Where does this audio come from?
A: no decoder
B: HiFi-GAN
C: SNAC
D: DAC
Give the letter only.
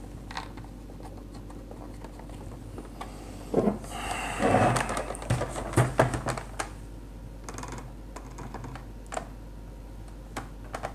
A